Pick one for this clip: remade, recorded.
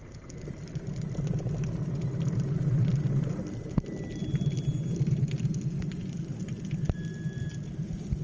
recorded